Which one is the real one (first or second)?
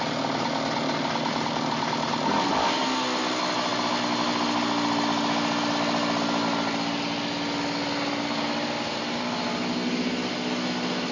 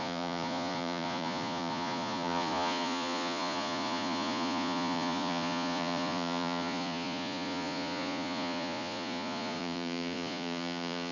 first